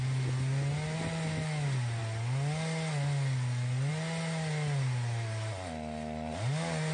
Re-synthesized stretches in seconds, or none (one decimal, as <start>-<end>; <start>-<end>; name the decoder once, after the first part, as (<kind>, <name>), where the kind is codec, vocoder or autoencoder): none